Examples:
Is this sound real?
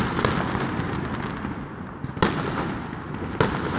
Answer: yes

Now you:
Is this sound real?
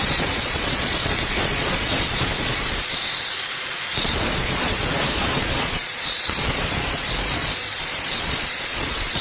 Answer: no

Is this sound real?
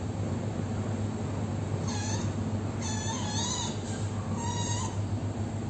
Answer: yes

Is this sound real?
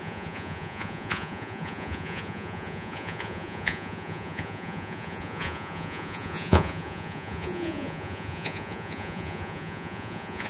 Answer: no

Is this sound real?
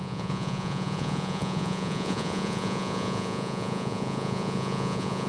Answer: no